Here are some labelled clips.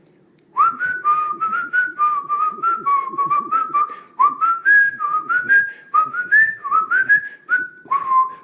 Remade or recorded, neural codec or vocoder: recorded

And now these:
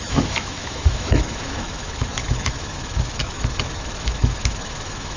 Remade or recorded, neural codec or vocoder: remade, autoencoder, DAC-VAE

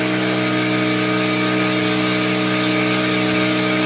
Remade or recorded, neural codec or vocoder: recorded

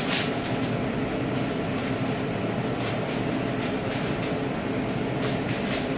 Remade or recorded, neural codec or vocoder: recorded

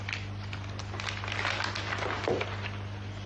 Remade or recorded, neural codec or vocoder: recorded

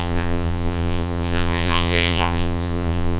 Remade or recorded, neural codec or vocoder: remade, vocoder, Vocos